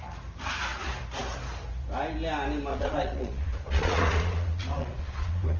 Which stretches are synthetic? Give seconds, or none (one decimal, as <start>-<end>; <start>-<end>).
2.7-5.6